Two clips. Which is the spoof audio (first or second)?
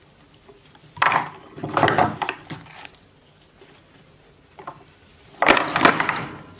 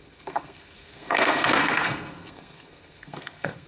second